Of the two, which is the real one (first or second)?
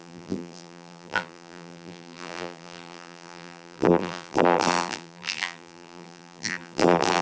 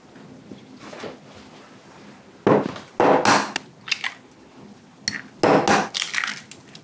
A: second